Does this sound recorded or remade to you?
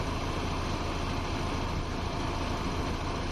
recorded